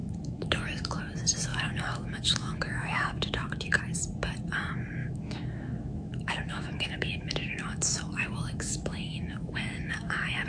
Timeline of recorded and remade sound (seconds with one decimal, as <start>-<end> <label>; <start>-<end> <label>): 0.0-1.0 remade; 1.0-1.5 recorded; 1.5-3.8 remade; 3.8-5.0 recorded; 5.0-10.5 remade